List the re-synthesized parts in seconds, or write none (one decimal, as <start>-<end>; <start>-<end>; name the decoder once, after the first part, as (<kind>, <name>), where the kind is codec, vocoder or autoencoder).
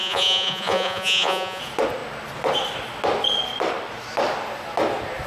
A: 0.0-1.6 (vocoder, Vocos)